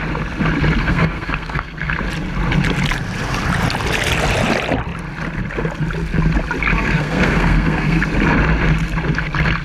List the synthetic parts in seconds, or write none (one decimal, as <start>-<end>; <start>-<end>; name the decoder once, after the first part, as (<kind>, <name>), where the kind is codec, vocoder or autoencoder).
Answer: 0.8-1.9 (codec, SNAC); 6.7-8.0